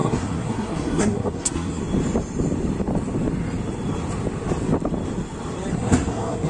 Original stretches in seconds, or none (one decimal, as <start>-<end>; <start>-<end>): 1.8-5.7